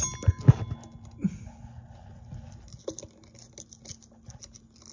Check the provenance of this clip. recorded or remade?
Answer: recorded